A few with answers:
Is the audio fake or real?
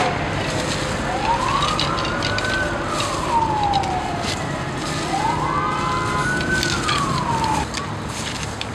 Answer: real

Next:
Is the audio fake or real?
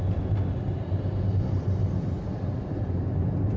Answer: real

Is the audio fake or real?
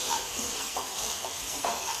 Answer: fake